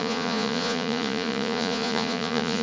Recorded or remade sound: remade